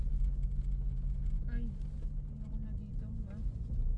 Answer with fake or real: real